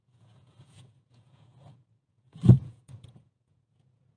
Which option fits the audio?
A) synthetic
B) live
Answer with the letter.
A